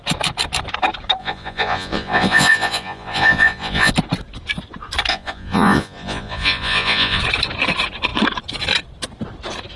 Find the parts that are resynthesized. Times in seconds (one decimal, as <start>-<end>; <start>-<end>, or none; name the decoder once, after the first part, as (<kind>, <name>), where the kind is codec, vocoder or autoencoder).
1.2-3.9 (vocoder, Vocos); 5.1-7.2